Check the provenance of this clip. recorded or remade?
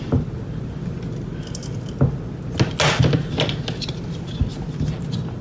recorded